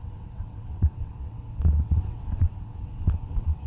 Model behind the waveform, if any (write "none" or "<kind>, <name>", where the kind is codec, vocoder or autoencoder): vocoder, WaveNeXt